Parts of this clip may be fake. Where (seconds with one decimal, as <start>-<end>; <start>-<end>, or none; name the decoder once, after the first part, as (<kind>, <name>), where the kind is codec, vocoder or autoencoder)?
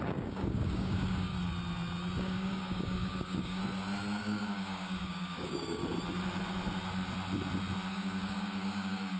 0.0-1.3 (codec, DAC); 2.2-3.6; 4.2-5.8; 7.9-9.2